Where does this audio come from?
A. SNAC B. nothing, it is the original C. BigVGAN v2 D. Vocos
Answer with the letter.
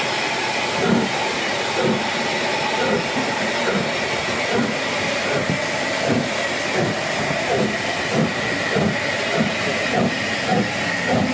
B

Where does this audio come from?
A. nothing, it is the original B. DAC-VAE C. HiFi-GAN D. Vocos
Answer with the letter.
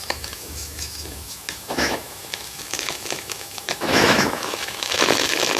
B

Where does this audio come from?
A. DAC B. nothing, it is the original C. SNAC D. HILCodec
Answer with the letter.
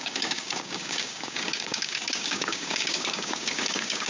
A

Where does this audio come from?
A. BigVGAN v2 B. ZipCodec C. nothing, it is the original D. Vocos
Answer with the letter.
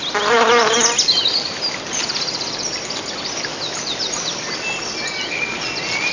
C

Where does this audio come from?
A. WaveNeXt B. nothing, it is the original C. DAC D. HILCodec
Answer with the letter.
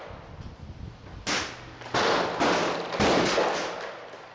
B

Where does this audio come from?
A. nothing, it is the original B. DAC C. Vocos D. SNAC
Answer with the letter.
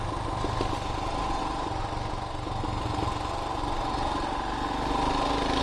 A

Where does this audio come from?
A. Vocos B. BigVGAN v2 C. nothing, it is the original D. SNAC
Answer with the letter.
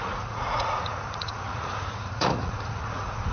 A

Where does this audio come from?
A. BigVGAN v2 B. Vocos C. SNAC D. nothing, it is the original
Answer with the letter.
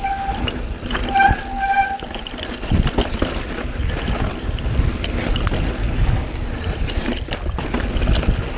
D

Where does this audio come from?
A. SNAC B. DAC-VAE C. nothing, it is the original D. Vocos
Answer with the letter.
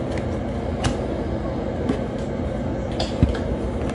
C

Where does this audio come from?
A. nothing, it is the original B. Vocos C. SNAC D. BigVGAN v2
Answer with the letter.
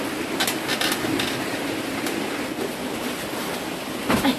A